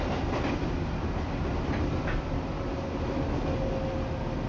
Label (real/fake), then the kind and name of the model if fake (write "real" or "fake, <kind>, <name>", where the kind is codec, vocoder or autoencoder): real